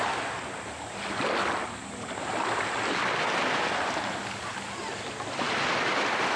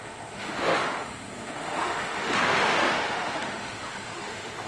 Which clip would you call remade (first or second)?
second